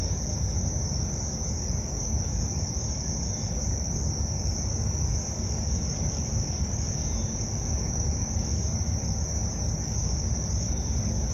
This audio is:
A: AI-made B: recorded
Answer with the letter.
A